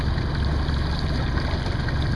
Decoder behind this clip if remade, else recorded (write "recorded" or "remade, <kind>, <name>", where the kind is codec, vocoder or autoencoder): recorded